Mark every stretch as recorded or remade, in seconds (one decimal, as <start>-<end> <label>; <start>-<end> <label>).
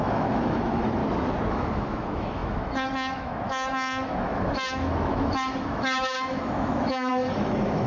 0.0-1.0 remade; 1.0-1.5 recorded; 1.5-7.9 remade